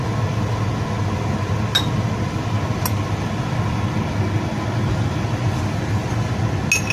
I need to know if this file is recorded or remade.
recorded